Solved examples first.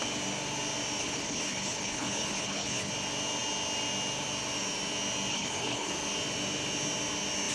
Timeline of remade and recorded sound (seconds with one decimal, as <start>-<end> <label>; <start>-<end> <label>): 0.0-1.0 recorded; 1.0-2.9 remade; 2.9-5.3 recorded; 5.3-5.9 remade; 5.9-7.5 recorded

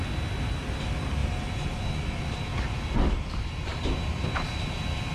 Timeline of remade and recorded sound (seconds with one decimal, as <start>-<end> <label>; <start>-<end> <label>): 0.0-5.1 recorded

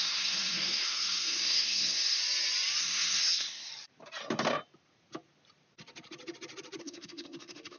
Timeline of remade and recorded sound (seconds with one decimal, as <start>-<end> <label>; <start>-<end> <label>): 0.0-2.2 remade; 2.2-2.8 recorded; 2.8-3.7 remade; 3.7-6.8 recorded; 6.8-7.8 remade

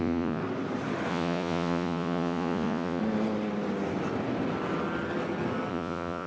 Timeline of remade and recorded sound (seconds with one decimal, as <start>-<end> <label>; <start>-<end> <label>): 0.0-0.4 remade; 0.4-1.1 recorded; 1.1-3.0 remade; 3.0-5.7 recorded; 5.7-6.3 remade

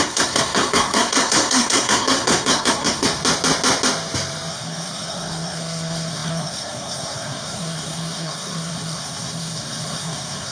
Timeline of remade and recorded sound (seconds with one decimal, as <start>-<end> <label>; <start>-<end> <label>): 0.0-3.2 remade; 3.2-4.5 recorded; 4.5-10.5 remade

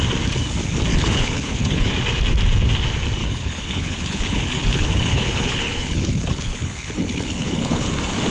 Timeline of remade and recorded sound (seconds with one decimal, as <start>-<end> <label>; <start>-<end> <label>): 0.0-0.9 recorded; 0.9-1.9 remade; 1.9-3.2 recorded; 3.2-7.9 remade; 7.9-8.3 recorded